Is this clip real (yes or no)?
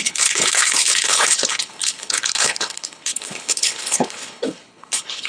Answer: no